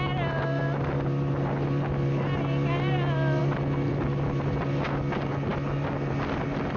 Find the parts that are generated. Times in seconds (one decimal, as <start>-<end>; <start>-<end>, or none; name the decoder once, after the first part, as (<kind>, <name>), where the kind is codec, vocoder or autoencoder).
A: none